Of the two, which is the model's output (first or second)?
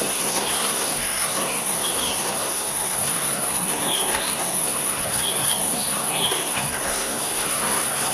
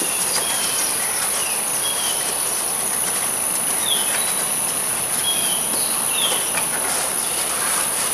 first